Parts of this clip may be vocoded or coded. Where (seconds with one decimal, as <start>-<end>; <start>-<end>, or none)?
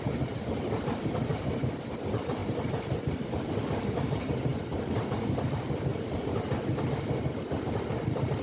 none